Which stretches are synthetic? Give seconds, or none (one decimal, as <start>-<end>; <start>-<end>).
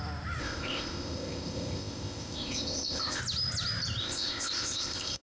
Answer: 0.4-3.2; 4.0-5.2